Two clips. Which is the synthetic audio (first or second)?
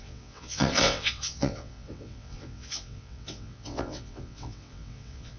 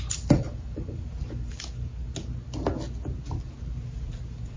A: first